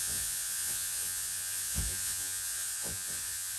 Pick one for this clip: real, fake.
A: fake